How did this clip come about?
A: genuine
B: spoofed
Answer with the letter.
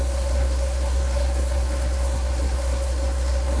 B